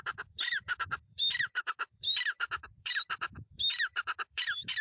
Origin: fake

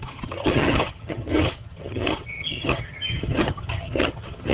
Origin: fake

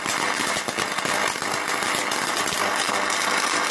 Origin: real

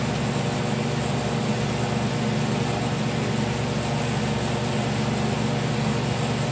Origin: real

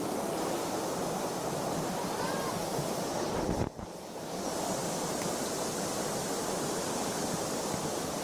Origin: real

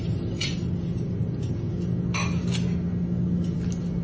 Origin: real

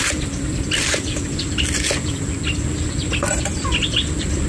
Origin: real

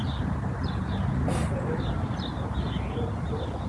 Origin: real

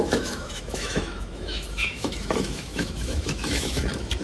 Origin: fake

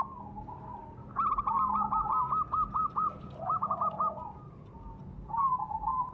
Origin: real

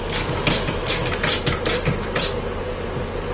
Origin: real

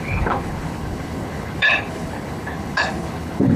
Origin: fake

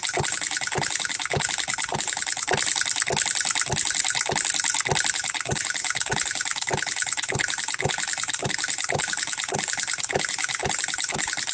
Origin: real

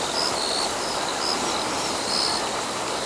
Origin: real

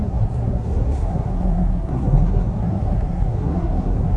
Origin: fake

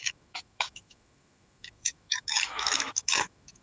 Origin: fake